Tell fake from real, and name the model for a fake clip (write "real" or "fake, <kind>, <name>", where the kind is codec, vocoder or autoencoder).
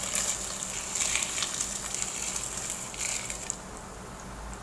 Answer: real